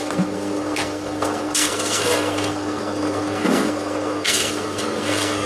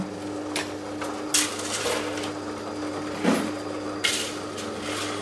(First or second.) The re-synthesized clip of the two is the first